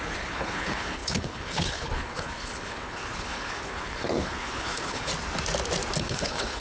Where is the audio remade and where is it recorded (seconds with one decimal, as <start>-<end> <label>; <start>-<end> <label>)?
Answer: 0.0-5.1 remade; 5.1-6.0 recorded; 6.0-6.6 remade